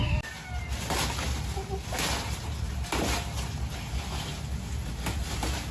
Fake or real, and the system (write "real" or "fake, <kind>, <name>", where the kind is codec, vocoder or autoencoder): real